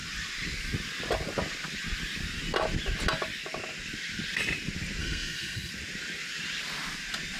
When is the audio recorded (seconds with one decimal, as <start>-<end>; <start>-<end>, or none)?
0.0-5.0; 5.7-7.4